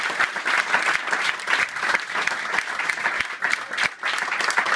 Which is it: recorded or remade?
recorded